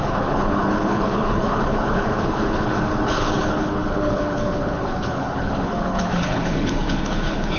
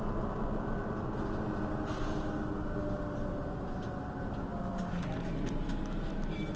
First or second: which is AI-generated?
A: first